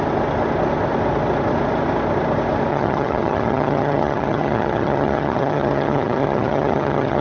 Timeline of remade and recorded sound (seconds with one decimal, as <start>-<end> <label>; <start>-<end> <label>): 0.0-2.7 recorded; 2.7-7.2 remade